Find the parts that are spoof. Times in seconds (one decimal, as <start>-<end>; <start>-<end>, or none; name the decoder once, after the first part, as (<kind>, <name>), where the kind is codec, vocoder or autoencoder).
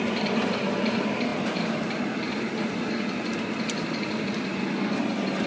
none